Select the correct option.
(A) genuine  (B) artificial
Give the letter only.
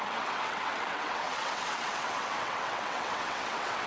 B